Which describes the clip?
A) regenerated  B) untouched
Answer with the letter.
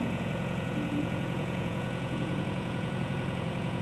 A